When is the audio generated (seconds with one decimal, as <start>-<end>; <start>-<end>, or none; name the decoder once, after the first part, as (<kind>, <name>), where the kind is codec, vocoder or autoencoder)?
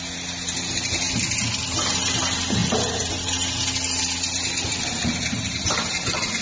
none